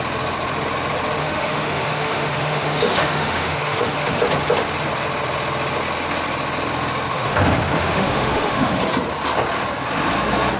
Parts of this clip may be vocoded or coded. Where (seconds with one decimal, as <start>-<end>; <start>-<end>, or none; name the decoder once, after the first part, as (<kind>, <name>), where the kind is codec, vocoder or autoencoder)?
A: 1.2-4.2 (autoencoder, DAC-VAE); 7.1-8.8